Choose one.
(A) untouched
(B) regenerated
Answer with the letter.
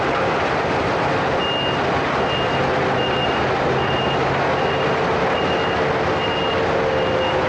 A